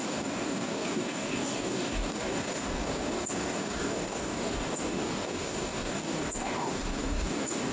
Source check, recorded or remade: remade